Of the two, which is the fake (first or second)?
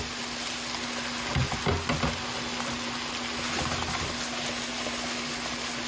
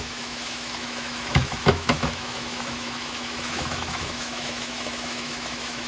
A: second